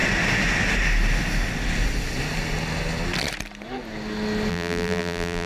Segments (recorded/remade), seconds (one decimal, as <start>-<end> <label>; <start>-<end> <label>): 0.0-4.5 recorded; 4.5-5.5 remade

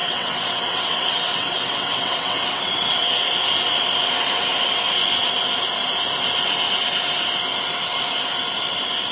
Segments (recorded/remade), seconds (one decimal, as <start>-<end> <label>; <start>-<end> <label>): 0.0-3.3 remade; 3.3-9.1 recorded

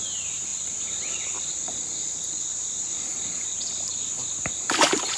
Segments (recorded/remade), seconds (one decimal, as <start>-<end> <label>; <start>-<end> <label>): 0.0-5.2 recorded

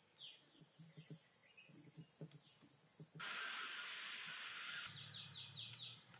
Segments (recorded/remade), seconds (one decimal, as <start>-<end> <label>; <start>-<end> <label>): 0.0-6.2 recorded

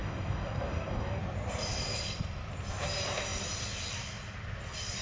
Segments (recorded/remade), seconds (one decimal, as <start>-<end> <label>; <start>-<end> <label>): 0.0-1.2 remade; 1.2-5.0 recorded

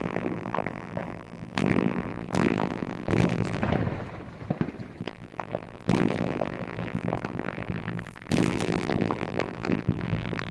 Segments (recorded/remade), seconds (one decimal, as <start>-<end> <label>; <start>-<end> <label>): 0.0-3.6 remade; 3.6-5.0 recorded; 5.0-10.5 remade

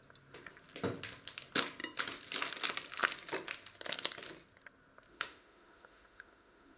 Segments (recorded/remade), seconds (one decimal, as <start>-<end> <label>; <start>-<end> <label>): 0.0-5.1 recorded; 5.1-6.8 remade

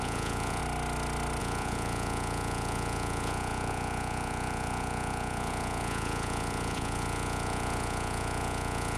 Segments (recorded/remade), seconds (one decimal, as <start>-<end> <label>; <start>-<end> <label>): 0.0-0.6 remade; 0.6-1.4 recorded; 1.4-9.0 remade